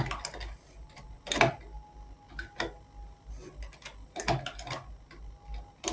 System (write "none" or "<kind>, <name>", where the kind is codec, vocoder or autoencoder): none